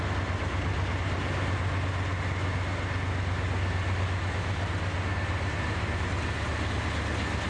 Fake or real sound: real